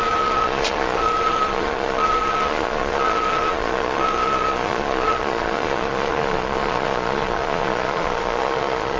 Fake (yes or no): yes